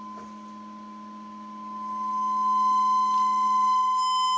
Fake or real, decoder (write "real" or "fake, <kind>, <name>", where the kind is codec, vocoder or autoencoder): real